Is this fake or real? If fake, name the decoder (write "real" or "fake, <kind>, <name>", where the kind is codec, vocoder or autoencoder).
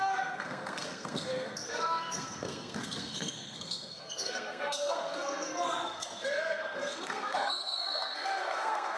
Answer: fake, codec, SNAC